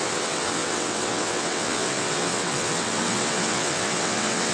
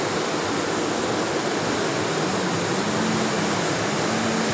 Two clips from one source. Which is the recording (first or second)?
second